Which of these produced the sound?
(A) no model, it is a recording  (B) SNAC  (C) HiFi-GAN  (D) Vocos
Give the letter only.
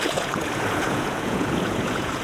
D